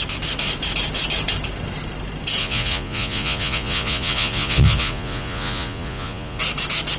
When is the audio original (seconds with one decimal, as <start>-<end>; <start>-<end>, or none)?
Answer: 0.0-2.4; 6.4-7.0